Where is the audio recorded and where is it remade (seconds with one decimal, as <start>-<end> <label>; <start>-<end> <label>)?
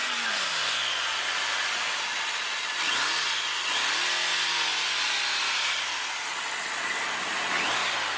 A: 0.0-1.9 remade; 1.9-4.3 recorded; 4.3-5.0 remade; 5.0-8.2 recorded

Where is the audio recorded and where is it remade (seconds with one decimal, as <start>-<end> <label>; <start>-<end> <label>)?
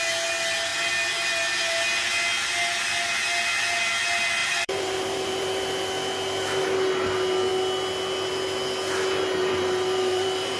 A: 0.0-4.4 recorded; 4.4-5.6 remade; 5.6-9.4 recorded; 9.4-10.6 remade